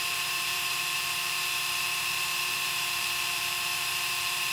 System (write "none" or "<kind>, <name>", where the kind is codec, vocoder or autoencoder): vocoder, BigVGAN v2